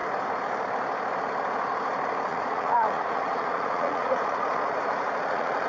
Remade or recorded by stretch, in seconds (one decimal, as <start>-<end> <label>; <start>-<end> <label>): 0.0-2.3 recorded; 2.3-5.7 remade